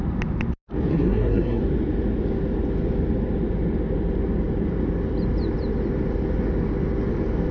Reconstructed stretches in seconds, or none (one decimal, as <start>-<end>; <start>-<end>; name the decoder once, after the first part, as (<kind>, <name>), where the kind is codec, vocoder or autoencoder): 0.9-1.6 (codec, SNAC)